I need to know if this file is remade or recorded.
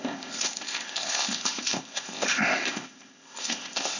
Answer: remade